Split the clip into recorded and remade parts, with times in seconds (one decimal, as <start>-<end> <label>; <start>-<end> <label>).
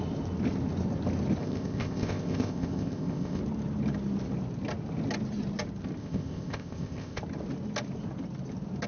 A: 0.0-1.4 recorded; 1.4-3.4 remade; 3.4-6.0 recorded; 6.0-7.2 remade; 7.2-8.9 recorded